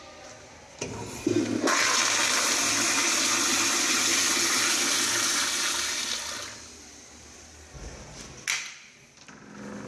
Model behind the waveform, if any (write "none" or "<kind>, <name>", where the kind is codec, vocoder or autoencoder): none